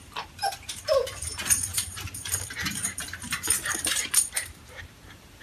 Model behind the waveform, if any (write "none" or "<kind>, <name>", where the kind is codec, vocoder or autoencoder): vocoder, BigVGAN v2